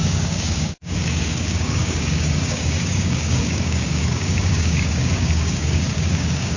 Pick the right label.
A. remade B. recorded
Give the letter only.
A